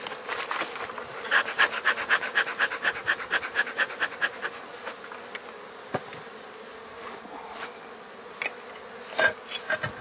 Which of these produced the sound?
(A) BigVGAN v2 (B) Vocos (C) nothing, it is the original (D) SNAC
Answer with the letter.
C